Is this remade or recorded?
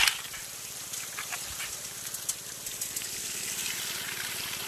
recorded